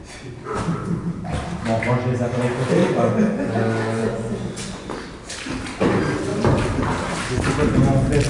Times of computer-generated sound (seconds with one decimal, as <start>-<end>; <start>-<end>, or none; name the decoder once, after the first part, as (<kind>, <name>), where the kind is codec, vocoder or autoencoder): 2.8-3.5 (vocoder, Vocos); 4.0-4.9